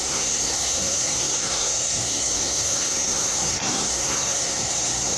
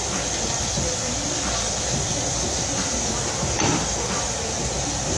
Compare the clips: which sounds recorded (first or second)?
second